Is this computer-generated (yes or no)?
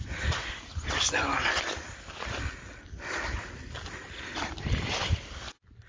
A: no